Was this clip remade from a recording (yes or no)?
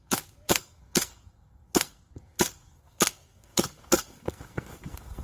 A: yes